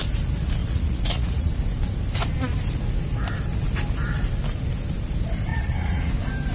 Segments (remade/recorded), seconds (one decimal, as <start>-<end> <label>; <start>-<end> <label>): 0.0-0.6 recorded; 0.6-1.5 remade; 1.5-5.5 recorded; 5.5-6.1 remade; 6.1-6.5 recorded